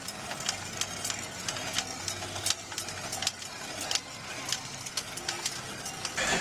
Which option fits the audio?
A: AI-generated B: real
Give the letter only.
B